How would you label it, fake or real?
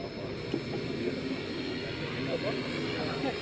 real